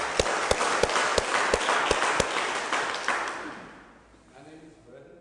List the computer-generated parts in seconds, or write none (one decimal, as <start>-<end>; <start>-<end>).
none